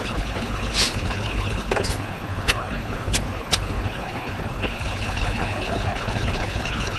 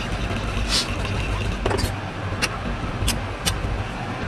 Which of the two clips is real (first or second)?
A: second